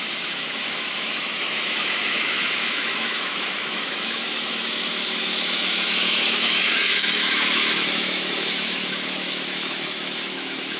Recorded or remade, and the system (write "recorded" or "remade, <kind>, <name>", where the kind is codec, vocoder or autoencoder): remade, autoencoder, DAC-VAE